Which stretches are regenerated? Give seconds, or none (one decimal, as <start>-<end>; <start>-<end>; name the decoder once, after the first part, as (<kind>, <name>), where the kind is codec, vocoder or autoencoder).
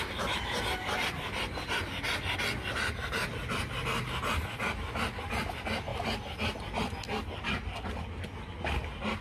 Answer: none